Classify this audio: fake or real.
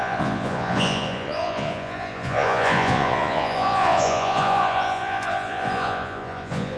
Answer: fake